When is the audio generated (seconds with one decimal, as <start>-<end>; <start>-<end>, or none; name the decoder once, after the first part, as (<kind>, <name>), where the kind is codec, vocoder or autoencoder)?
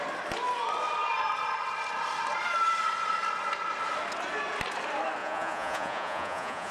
5.2-6.7 (vocoder, Vocos)